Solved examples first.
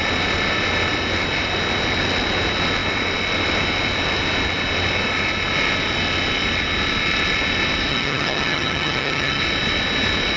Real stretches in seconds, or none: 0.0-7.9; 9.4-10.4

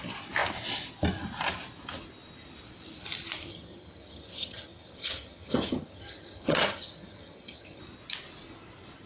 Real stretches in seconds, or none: 0.0-3.5; 7.8-9.1

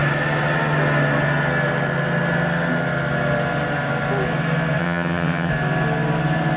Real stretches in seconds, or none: 0.0-4.8; 5.5-6.6

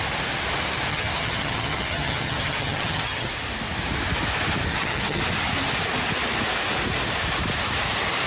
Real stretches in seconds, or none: 0.0-0.9; 3.3-4.7; 5.2-8.3

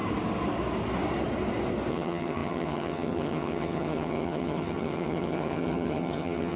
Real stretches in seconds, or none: 0.0-1.9

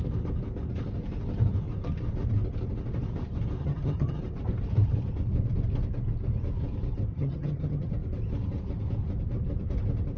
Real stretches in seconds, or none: 0.0-3.6; 4.2-7.1; 7.9-10.2

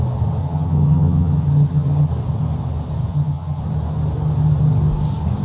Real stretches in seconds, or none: 0.0-0.4; 2.1-3.1; 3.6-5.4